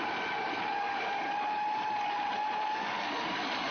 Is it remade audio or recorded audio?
recorded